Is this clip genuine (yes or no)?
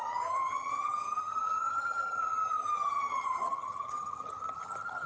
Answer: no